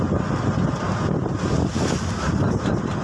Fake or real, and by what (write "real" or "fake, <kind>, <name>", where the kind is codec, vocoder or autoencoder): real